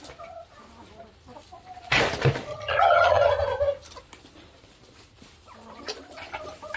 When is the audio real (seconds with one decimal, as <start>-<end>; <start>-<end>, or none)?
0.0-2.5; 3.3-6.8